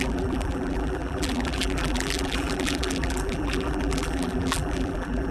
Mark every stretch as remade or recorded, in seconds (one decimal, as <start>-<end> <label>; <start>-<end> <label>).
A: 0.0-5.3 remade